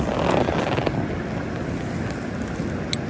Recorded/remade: recorded